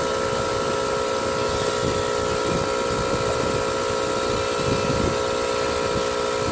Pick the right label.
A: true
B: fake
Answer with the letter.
A